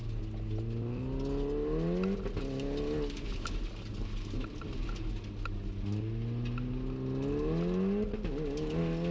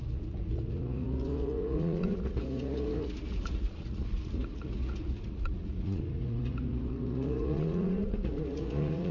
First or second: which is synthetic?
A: second